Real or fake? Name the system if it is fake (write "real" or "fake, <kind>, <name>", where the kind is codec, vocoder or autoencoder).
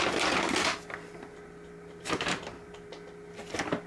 real